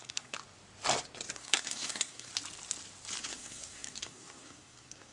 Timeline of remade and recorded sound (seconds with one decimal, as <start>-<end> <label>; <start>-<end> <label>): 0.0-0.4 remade; 0.4-1.3 recorded; 1.3-2.3 remade; 2.3-3.2 recorded; 3.2-5.1 remade